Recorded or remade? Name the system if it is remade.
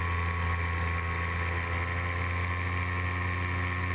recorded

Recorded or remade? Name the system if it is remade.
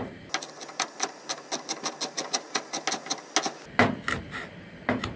recorded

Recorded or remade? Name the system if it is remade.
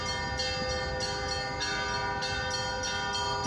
recorded